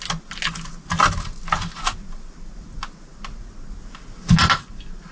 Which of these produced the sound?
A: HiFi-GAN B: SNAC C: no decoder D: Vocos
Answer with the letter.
C